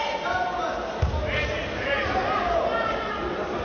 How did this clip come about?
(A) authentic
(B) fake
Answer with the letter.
A